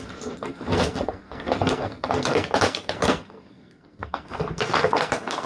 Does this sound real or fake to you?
fake